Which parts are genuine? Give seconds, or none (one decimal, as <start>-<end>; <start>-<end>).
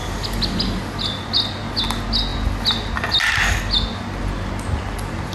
0.0-5.3